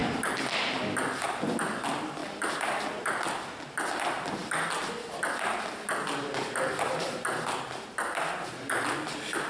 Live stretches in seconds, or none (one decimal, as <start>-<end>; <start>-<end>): 0.0-2.2; 3.0-9.5